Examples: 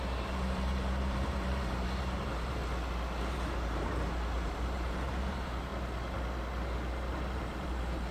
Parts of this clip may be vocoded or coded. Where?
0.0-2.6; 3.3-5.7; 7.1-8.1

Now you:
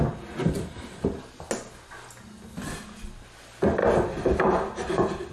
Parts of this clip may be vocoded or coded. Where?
3.8-4.4

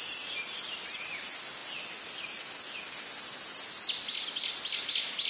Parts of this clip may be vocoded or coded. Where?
none